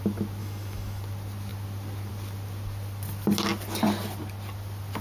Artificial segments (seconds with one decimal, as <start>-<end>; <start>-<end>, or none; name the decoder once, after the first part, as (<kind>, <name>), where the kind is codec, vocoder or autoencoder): 0.4-1.0 (autoencoder, DAC-VAE)

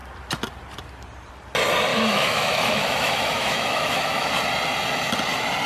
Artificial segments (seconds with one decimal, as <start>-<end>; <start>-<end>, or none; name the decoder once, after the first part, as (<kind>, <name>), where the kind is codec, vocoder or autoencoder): 1.9-4.3 (autoencoder, DAC-VAE)

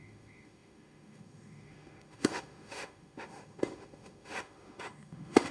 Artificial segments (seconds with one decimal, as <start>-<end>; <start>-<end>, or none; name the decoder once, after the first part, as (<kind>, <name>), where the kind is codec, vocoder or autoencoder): 0.0-5.5 (autoencoder, DAC-VAE)

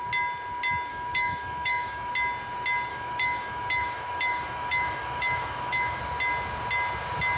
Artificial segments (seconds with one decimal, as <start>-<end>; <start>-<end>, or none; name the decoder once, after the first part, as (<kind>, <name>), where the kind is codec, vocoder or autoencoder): 0.9-2.1 (autoencoder, DAC-VAE); 2.9-6.0

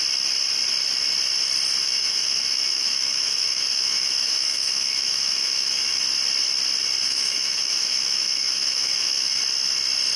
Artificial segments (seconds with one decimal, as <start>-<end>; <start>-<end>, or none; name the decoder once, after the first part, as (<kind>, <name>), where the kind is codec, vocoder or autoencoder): 1.8-6.0 (autoencoder, DAC-VAE); 7.0-9.4